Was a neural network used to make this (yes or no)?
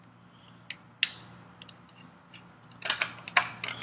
no